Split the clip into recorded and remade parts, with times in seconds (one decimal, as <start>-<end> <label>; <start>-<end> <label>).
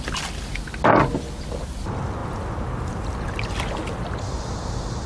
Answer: 0.0-5.1 recorded